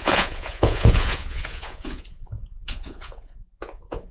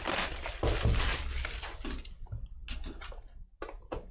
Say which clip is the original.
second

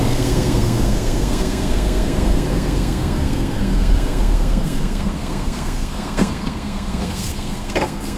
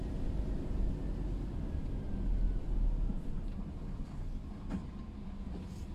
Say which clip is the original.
second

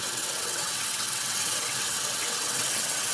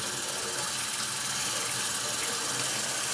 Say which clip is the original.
second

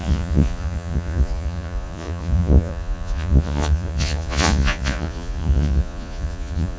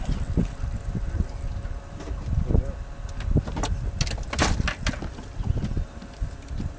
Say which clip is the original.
second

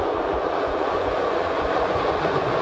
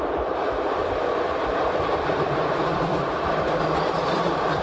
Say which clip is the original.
second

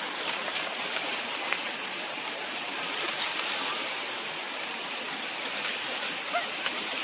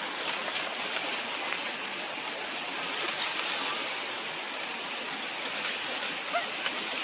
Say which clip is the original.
second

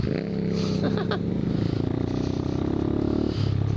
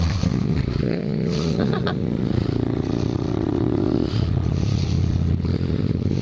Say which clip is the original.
first